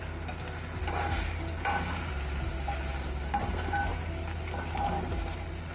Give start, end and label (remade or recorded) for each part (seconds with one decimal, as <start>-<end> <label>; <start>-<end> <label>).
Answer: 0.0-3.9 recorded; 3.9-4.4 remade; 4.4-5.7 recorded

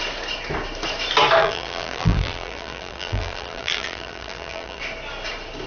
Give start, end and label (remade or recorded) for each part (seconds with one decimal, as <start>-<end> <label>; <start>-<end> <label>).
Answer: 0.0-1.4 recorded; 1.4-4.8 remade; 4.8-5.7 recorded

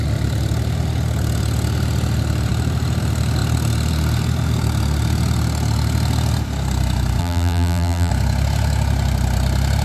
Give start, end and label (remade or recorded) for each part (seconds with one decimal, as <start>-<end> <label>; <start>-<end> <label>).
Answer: 0.0-7.2 recorded; 7.2-8.1 remade; 8.1-9.8 recorded

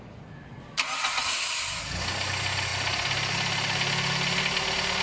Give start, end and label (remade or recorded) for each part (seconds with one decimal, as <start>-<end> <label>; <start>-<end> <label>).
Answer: 0.0-5.0 recorded

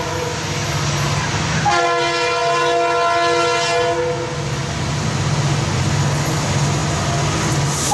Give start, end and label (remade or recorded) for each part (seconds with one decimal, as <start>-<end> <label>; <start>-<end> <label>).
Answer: 0.0-7.9 recorded